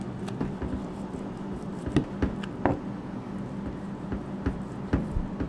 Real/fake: real